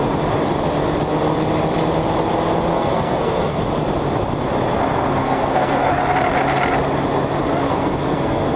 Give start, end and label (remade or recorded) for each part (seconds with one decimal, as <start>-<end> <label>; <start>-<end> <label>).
0.0-2.7 recorded; 2.7-3.6 remade; 3.6-5.2 recorded; 5.2-5.9 remade; 5.9-7.7 recorded; 7.7-8.6 remade